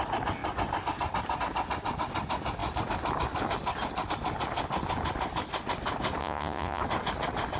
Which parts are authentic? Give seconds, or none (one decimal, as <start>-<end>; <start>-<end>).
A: 0.0-6.2; 6.8-7.6